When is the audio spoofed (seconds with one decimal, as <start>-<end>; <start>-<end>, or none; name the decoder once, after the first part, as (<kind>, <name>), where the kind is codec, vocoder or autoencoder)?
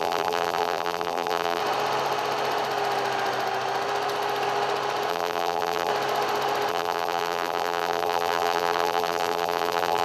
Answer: 0.0-1.6 (vocoder, BigVGAN v2); 5.1-5.9; 6.7-10.0